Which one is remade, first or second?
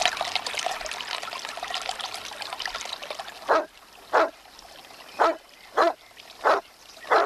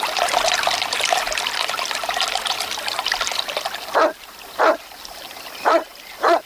second